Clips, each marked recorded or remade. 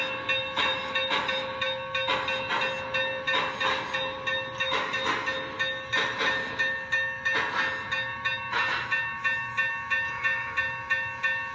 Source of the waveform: recorded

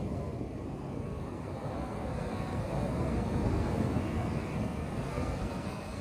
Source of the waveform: remade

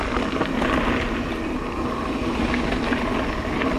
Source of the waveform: recorded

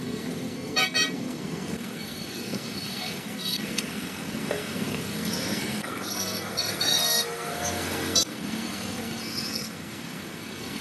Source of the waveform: remade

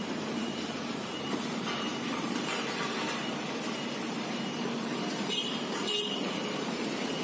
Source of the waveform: remade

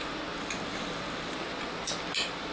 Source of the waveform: recorded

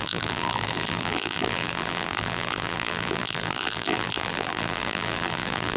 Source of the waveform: remade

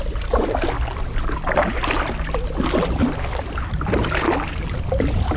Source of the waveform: recorded